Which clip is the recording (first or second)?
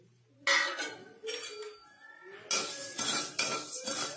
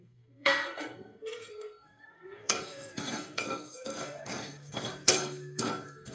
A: first